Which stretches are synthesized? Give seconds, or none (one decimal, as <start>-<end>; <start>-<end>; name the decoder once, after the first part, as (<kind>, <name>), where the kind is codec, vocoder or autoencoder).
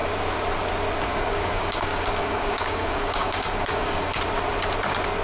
1.1-4.2 (codec, DAC)